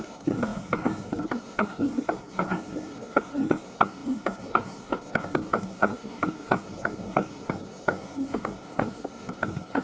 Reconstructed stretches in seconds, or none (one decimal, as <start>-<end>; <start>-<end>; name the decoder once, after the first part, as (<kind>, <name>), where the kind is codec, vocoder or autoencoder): 0.0-9.8 (codec, SNAC)